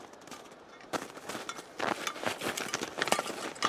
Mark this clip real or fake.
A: real